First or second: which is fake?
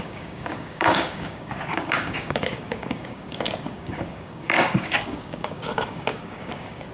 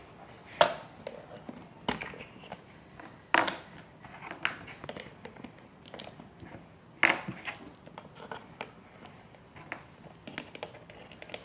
first